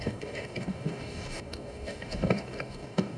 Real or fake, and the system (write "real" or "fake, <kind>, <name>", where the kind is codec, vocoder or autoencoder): fake, codec, DAC